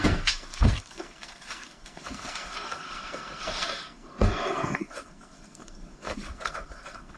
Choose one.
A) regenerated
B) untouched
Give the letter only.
A